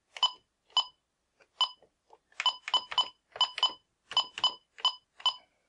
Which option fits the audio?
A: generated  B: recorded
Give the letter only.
B